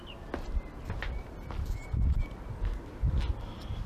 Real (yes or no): yes